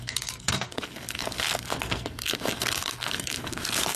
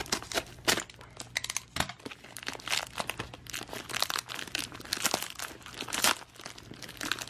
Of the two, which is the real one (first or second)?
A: second